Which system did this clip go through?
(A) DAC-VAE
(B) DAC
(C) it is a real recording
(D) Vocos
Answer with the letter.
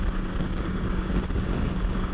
B